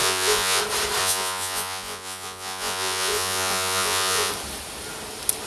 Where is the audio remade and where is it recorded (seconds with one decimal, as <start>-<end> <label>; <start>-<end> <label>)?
0.0-0.6 remade; 0.6-1.0 recorded; 1.0-4.3 remade; 4.3-5.5 recorded